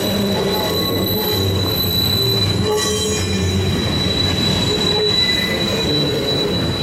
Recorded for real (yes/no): yes